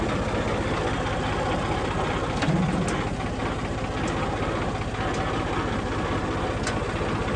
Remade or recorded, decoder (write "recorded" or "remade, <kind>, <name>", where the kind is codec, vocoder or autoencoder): recorded